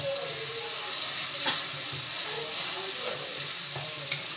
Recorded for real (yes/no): yes